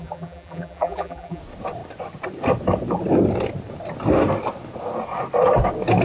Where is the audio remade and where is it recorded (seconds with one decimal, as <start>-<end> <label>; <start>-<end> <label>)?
0.0-1.4 remade; 1.4-6.0 recorded